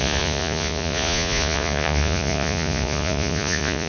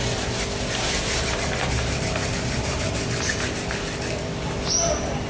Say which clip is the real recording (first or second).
second